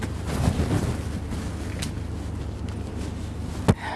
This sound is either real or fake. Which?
real